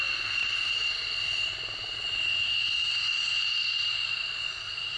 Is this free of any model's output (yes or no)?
yes